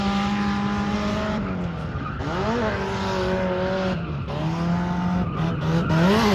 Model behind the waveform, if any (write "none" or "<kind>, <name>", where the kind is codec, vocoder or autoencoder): none